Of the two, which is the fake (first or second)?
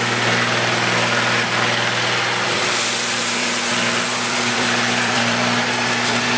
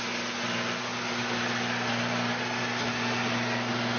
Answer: first